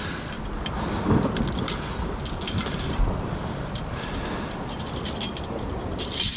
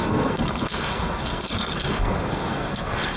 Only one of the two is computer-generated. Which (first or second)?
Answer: second